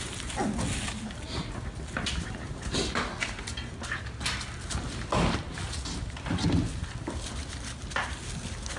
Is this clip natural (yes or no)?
yes